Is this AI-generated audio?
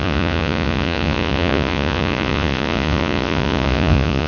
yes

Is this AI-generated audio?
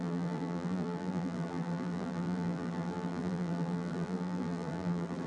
yes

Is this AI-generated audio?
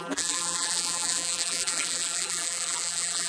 yes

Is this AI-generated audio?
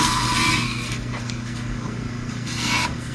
yes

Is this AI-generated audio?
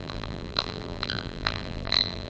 yes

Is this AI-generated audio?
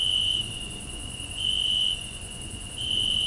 yes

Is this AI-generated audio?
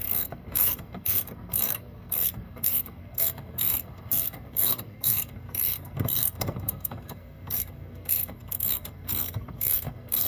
yes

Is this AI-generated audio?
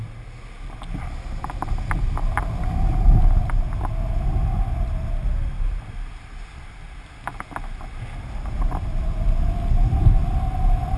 no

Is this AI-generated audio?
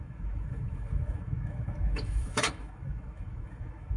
yes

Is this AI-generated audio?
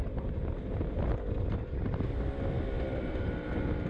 no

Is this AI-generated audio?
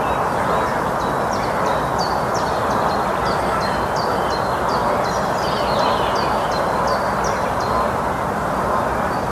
no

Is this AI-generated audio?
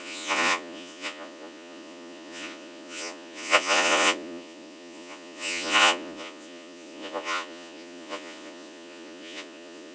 yes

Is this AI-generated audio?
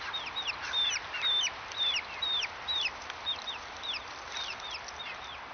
no